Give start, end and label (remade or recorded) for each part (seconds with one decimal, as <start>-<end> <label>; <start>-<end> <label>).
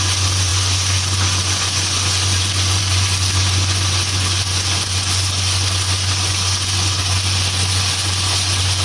0.0-8.8 remade